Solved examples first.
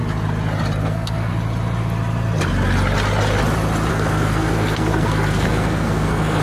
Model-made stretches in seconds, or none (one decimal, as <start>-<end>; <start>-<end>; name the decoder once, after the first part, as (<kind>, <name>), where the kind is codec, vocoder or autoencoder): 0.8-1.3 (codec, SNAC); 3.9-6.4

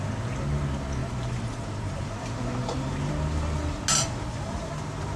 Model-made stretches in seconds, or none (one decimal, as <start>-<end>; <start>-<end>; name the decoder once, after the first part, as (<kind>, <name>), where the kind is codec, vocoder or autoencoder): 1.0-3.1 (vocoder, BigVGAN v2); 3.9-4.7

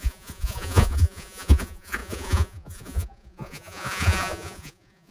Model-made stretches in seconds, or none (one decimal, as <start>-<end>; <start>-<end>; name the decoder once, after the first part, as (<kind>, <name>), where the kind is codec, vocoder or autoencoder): 0.0-5.1 (vocoder, Vocos)